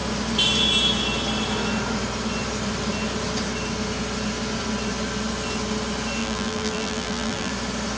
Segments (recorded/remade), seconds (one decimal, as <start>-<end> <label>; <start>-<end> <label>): 0.0-6.2 recorded; 6.2-7.5 remade; 7.5-8.0 recorded